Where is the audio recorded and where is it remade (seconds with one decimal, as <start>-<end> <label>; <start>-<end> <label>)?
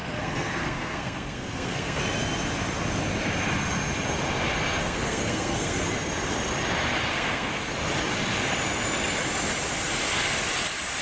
0.0-2.0 remade; 2.0-4.8 recorded; 4.8-5.9 remade; 5.9-7.1 recorded; 7.1-7.7 remade; 7.7-11.0 recorded